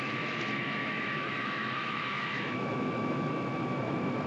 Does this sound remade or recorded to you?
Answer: remade